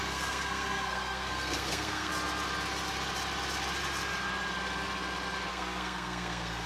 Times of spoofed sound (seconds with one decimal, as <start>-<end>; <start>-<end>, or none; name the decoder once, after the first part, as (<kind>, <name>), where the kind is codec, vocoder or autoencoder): 0.0-2.1 (codec, SNAC); 5.5-6.7